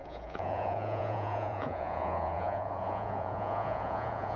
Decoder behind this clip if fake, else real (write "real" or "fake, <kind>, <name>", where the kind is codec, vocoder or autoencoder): fake, vocoder, Vocos